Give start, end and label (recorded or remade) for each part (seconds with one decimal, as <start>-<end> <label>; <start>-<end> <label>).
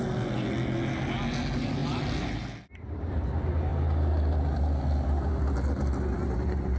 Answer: 0.0-6.8 recorded